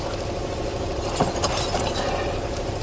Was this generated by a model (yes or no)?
no